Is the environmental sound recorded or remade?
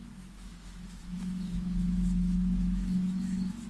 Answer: remade